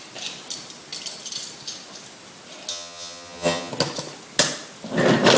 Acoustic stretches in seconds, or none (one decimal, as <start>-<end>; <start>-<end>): 0.0-2.7; 3.7-5.4